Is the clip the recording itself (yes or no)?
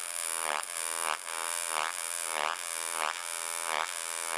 yes